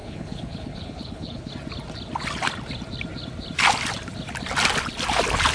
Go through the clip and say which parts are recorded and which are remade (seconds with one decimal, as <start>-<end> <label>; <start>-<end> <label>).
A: 0.0-1.5 remade; 1.5-5.5 recorded